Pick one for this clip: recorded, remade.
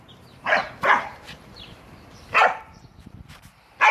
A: remade